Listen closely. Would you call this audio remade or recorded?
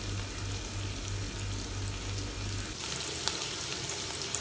recorded